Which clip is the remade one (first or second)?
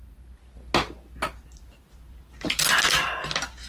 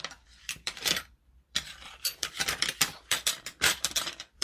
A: second